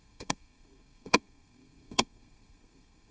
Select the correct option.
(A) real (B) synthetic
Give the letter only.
B